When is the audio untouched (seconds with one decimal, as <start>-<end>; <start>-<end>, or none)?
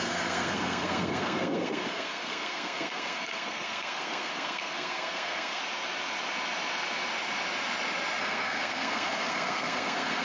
5.6-8.2